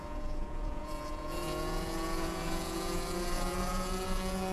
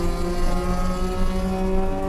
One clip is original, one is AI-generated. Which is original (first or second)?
second